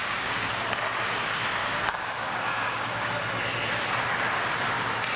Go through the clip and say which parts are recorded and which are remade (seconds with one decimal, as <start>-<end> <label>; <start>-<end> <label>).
0.0-0.5 remade; 0.5-1.6 recorded; 1.6-3.1 remade; 3.1-5.2 recorded